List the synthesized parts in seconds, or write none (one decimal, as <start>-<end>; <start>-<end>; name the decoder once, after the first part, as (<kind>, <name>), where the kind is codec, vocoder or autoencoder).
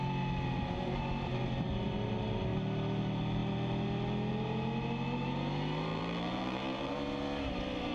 5.9-6.9 (vocoder, BigVGAN v2)